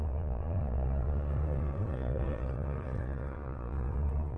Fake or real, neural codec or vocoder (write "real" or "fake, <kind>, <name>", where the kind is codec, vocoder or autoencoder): fake, vocoder, Vocos